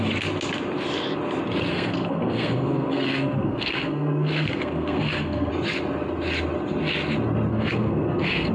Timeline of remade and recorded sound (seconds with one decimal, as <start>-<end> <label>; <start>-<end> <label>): 0.0-1.7 recorded; 1.7-5.5 remade; 5.5-7.5 recorded; 7.5-8.5 remade